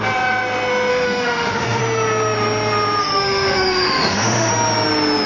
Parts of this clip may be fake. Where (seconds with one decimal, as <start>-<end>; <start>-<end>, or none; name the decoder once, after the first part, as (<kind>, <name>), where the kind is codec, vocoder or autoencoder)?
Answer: 0.9-1.8 (autoencoder, DAC-VAE); 3.0-4.5